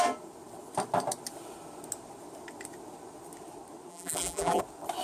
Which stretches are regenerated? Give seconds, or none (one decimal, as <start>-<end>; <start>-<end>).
3.9-4.6